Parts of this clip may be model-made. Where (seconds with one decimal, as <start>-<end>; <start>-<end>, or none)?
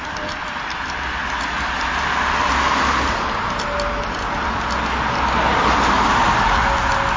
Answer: none